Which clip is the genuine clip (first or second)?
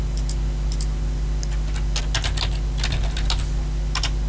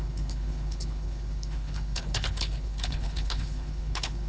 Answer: first